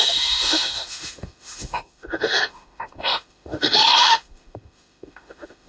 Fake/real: fake